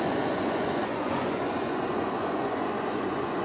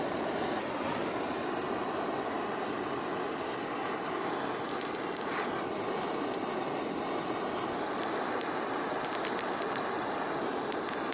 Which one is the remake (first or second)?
first